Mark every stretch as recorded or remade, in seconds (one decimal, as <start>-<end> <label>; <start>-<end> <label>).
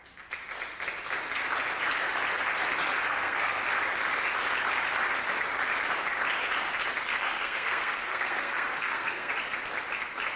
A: 0.0-3.1 recorded; 3.1-3.6 remade; 3.6-7.1 recorded; 7.1-9.3 remade; 9.3-10.4 recorded